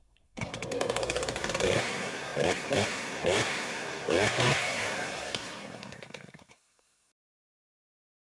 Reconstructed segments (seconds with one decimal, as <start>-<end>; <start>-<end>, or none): 0.0-8.4